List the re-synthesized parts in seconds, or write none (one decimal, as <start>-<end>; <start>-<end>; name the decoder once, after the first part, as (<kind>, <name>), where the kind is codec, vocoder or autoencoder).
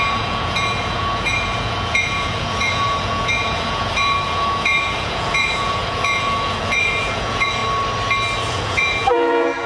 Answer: 0.0-7.6 (vocoder, Vocos); 8.5-9.7